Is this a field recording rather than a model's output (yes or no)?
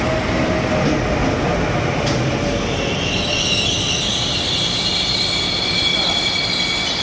yes